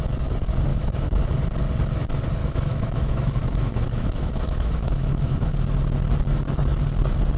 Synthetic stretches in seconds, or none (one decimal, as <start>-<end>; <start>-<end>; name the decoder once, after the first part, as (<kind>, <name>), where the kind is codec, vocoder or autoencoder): 0.7-1.3 (autoencoder, DAC-VAE); 2.4-5.5